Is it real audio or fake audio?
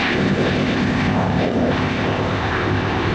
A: fake